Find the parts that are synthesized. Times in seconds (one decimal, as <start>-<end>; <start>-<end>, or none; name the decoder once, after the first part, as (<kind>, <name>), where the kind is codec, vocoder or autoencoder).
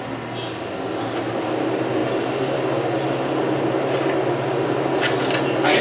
none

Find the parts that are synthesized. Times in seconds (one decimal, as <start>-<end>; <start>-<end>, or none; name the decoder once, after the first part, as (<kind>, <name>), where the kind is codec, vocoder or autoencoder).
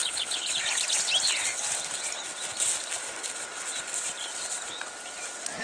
0.0-0.6 (codec, HILCodec)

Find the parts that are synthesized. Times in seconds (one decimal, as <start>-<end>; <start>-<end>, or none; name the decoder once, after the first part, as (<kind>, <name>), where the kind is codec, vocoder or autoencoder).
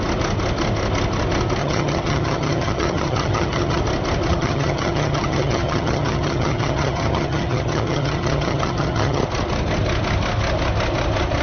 1.6-3.8 (vocoder, HiFi-GAN); 4.3-9.2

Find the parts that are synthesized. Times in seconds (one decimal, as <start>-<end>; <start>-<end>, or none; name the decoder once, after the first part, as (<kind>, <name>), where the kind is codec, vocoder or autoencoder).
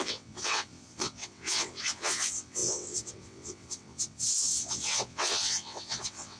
0.0-6.4 (vocoder, WaveNeXt)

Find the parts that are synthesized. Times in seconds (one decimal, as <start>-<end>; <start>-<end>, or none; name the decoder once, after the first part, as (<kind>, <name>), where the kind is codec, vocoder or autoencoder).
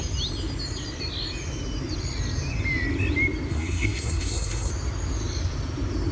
3.5-4.7 (codec, SNAC)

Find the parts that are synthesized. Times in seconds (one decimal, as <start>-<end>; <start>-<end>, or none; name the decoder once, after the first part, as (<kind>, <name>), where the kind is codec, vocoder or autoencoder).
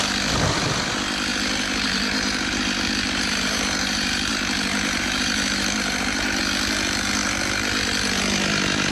1.3-6.4 (vocoder, BigVGAN v2)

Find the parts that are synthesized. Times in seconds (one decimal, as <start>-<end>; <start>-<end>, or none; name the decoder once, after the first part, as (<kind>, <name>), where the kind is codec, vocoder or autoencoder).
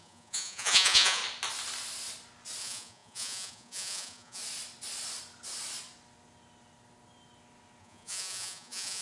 0.0-1.2 (vocoder, Vocos); 2.6-4.4; 7.8-9.0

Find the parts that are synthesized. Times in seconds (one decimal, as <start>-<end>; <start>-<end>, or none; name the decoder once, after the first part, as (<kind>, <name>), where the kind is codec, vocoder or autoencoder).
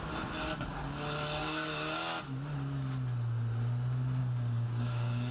1.4-2.2 (codec, DAC); 4.2-5.3